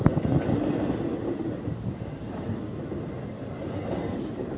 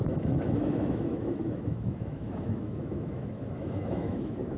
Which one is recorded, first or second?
first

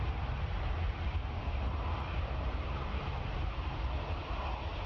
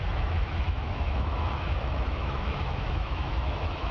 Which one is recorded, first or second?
first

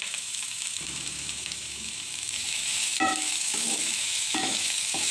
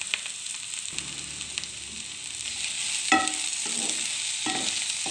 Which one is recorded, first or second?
second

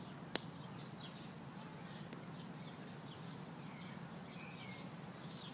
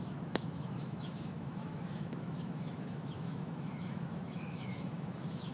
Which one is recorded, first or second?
first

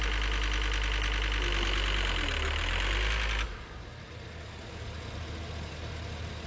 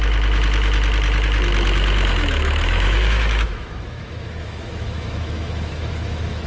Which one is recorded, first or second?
first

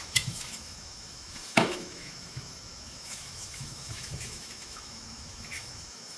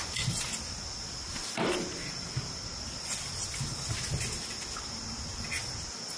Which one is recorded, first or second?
second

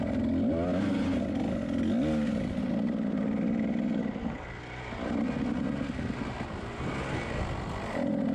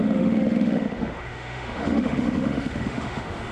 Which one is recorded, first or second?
first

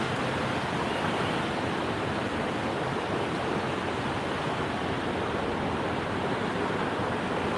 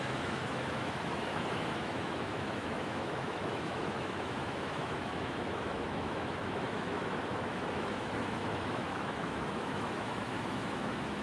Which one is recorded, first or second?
first